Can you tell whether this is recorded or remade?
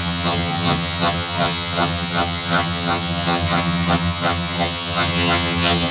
remade